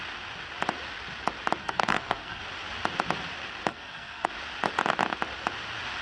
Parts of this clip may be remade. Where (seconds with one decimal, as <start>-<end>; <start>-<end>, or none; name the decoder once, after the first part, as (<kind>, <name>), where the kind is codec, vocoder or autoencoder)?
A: 1.6-2.4 (codec, SNAC); 3.7-4.3